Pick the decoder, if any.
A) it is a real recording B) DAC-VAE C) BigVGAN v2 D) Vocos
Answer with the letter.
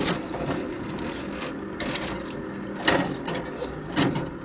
A